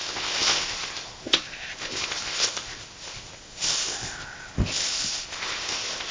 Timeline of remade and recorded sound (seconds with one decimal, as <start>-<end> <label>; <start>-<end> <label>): 0.0-6.1 remade